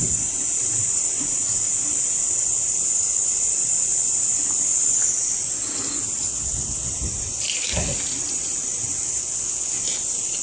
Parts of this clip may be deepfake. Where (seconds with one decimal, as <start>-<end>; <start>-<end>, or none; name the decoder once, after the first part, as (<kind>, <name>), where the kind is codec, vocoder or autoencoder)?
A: 6.3-6.9 (vocoder, WaveNeXt); 9.0-9.8